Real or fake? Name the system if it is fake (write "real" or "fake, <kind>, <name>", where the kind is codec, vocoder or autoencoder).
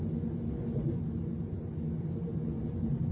real